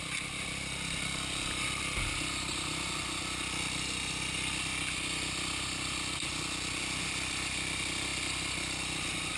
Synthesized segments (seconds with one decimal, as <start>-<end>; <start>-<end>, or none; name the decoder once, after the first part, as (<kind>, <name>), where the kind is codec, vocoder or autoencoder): none